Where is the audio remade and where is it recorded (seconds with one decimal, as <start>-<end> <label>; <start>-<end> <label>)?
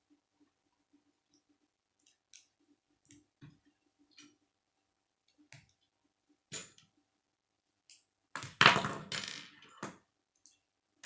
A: 0.0-11.1 recorded